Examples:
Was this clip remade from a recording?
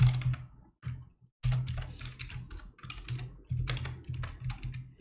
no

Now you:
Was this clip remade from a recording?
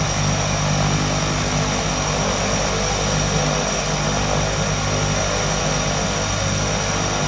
no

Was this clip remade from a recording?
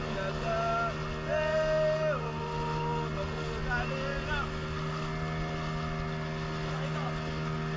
no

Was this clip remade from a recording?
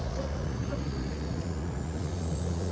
yes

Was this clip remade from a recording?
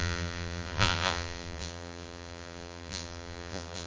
yes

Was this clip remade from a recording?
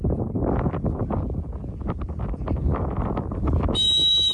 no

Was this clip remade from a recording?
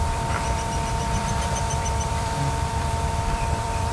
yes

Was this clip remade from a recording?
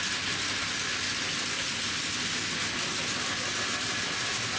no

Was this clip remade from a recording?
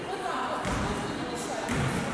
no